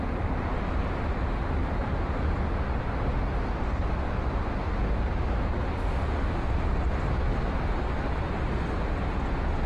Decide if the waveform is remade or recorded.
recorded